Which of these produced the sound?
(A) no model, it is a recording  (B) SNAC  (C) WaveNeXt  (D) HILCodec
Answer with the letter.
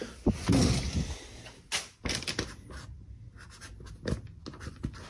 A